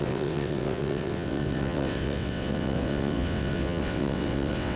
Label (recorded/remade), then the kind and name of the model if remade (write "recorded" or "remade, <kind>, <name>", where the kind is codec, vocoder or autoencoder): remade, vocoder, WaveNeXt